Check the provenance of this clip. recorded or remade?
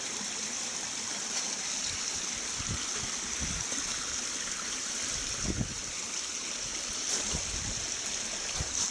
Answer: recorded